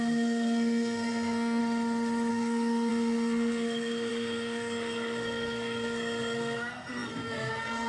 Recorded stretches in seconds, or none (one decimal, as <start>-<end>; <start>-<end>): 1.6-2.3

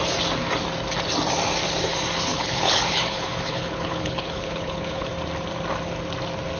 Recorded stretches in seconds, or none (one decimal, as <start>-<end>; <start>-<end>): 0.0-2.3; 5.1-6.6

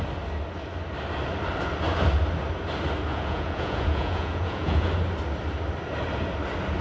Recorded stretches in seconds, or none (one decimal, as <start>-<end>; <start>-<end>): 0.0-3.1; 4.9-6.8

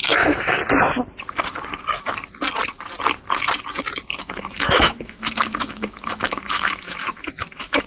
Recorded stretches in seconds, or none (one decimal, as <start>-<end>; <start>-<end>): 0.6-4.2

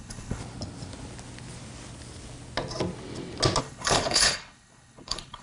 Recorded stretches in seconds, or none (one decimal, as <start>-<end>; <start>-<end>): 0.4-3.6